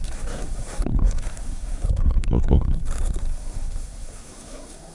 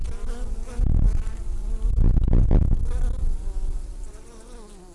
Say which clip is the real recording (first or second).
second